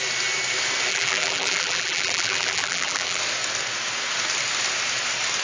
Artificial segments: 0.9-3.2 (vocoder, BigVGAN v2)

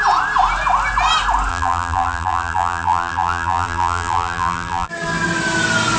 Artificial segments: 1.5-4.9 (vocoder, BigVGAN v2)